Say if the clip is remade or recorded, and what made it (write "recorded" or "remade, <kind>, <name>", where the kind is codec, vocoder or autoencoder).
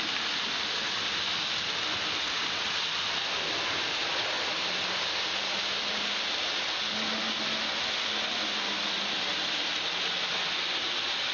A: recorded